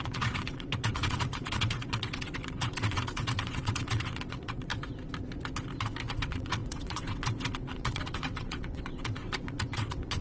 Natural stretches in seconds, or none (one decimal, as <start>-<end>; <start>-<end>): 4.7-6.1